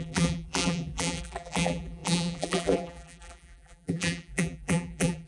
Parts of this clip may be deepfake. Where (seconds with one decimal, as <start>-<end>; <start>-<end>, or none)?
0.0-5.3